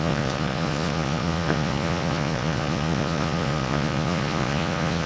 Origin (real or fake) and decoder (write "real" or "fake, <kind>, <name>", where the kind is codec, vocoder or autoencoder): fake, vocoder, Vocos